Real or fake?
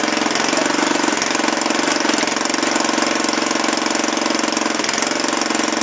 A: real